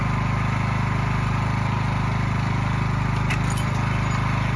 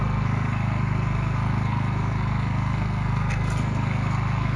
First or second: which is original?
first